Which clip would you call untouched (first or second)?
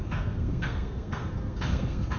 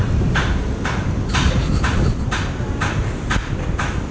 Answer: second